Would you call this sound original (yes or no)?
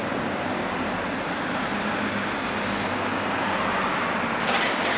yes